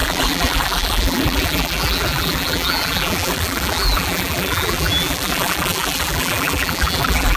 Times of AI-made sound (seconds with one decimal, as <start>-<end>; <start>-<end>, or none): 0.0-7.4